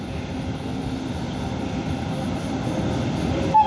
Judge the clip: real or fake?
real